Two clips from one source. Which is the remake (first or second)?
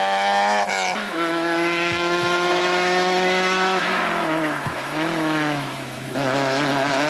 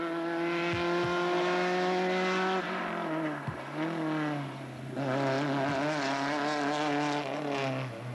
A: first